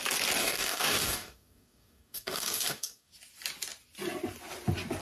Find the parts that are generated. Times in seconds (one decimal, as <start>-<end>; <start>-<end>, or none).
0.4-3.1